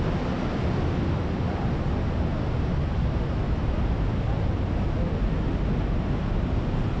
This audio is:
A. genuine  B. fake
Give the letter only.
A